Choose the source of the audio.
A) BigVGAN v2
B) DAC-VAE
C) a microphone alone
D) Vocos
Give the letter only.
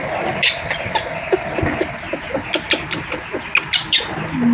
C